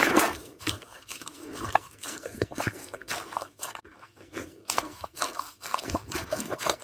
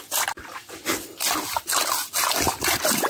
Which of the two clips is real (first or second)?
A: second